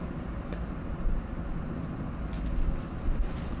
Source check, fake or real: real